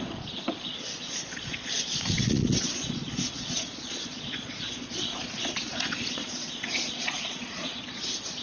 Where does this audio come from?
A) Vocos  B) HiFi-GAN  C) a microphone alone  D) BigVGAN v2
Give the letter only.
A